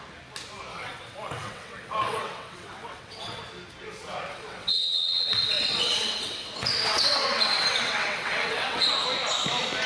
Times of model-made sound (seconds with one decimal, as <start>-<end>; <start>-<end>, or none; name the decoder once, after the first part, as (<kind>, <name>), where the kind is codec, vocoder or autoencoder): 0.7-3.4 (vocoder, WaveNeXt); 4.3-8.9